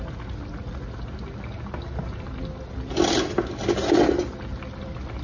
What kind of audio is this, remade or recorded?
recorded